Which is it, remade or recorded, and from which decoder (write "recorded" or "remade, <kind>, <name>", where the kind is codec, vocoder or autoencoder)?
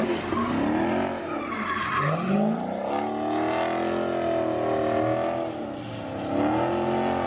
recorded